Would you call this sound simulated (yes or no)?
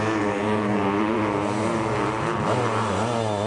no